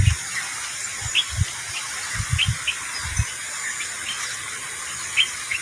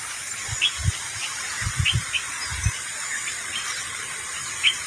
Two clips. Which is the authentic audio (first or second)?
first